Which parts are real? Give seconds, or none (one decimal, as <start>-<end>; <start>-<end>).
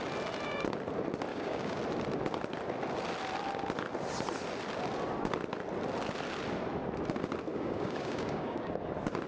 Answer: 0.0-1.3; 1.8-7.5; 8.7-9.3